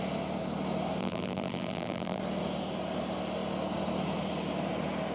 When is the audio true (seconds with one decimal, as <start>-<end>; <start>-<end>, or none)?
0.0-1.0; 2.2-5.1